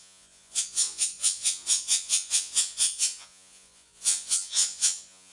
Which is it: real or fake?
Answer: fake